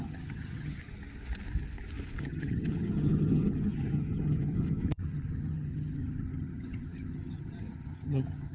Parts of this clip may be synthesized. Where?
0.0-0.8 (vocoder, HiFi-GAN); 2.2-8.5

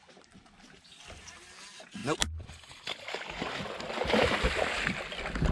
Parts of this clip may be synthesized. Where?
none